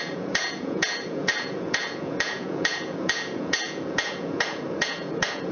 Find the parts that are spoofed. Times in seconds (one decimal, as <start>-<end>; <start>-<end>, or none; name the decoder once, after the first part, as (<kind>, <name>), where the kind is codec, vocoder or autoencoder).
0.0-5.5 (vocoder, Vocos)